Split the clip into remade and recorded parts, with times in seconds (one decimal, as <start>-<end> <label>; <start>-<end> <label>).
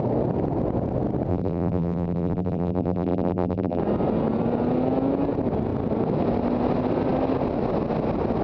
0.0-1.3 recorded; 1.3-3.8 remade; 3.8-8.4 recorded